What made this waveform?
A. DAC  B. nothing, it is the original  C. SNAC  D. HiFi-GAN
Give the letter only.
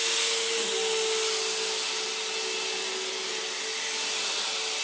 B